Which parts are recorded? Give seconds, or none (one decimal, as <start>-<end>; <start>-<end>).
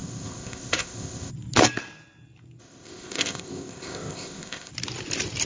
1.3-2.6; 4.7-5.5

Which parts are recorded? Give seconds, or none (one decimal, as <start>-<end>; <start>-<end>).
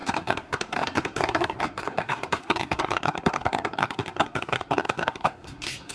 none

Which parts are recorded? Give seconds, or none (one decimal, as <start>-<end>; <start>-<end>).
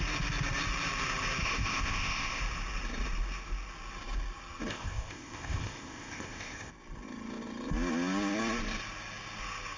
0.0-1.4; 2.4-4.7; 6.7-9.8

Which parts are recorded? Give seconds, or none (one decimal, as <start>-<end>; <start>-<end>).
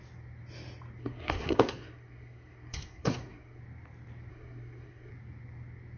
0.0-1.0; 3.6-4.3; 5.1-6.0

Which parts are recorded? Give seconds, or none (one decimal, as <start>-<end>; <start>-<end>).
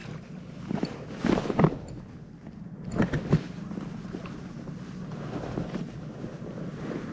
0.0-7.1